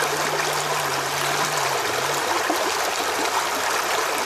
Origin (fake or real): real